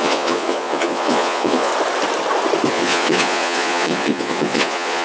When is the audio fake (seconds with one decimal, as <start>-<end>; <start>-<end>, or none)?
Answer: 0.0-1.7; 2.7-5.0